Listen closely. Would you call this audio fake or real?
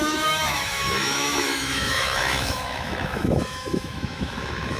fake